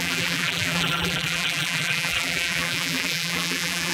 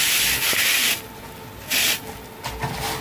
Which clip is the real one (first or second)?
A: second